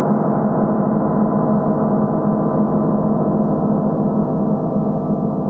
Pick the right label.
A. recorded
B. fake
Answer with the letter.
A